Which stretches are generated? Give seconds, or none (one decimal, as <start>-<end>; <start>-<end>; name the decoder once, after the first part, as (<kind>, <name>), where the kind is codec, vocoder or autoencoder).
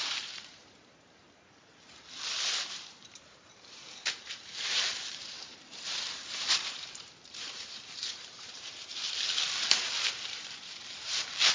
0.0-1.7 (vocoder, BigVGAN v2); 2.6-8.9; 9.8-11.5